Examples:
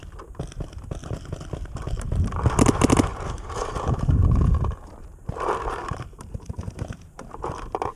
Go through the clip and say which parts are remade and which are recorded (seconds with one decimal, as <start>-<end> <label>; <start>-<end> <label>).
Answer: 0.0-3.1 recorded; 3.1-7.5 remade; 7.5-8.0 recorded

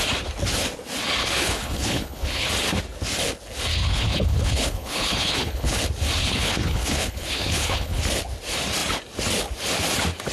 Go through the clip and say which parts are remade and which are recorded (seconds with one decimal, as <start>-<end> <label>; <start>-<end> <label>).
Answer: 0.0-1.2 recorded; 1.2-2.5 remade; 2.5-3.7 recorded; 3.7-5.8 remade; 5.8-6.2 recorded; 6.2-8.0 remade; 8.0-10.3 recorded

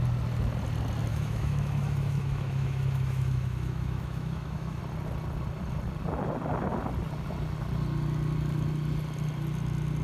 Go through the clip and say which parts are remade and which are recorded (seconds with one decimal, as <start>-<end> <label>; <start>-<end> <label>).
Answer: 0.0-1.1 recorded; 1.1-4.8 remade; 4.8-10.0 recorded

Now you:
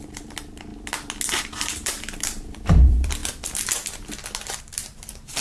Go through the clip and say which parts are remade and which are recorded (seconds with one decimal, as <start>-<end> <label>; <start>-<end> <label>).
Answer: 0.0-0.7 remade; 0.7-1.4 recorded; 1.4-3.2 remade; 3.2-4.6 recorded; 4.6-5.4 remade

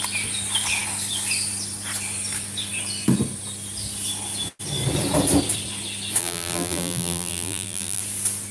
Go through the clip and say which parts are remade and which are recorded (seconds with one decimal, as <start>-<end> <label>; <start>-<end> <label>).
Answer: 0.0-6.2 recorded; 6.2-8.0 remade; 8.0-8.5 recorded